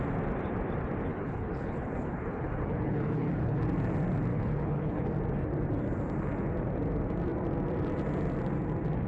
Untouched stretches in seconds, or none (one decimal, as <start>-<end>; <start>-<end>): 0.0-1.1; 3.6-4.3; 5.0-9.1